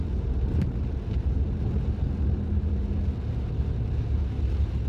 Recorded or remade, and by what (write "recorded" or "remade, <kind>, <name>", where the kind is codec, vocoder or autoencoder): recorded